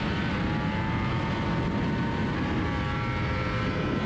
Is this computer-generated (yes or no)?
no